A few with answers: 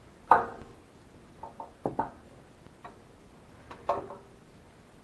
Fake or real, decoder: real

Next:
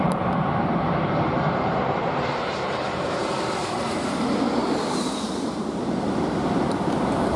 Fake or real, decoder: fake, vocoder, BigVGAN v2